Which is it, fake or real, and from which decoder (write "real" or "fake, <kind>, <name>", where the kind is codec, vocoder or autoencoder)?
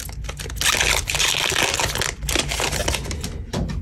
real